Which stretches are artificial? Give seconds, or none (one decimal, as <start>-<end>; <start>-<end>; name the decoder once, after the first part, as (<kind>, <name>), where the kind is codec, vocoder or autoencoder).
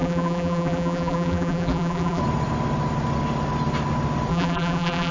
0.0-2.2 (vocoder, BigVGAN v2); 4.3-5.1